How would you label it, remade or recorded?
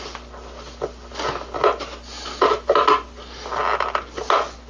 recorded